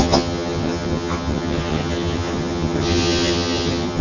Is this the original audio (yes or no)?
no